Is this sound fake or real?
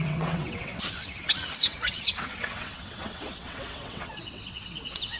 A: fake